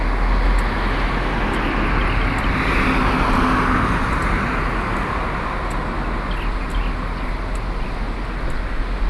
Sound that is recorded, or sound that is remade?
recorded